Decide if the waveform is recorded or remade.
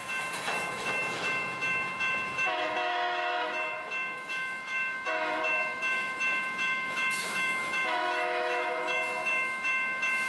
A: remade